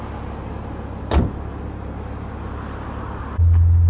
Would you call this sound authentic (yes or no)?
yes